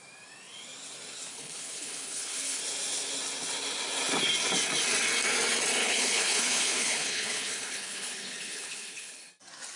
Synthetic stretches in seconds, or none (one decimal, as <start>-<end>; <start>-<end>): 1.3-2.6; 5.8-9.3